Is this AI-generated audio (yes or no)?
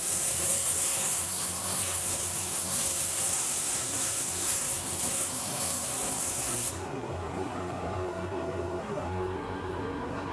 yes